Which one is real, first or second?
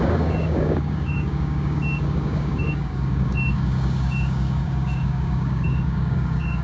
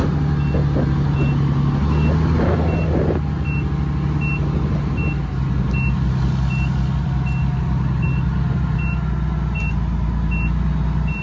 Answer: second